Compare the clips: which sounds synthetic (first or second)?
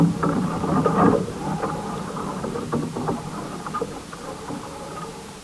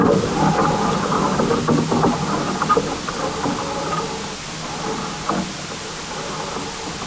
first